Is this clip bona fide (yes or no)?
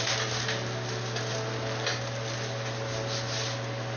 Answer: yes